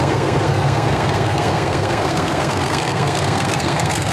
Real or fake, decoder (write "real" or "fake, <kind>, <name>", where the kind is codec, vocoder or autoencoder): fake, codec, SNAC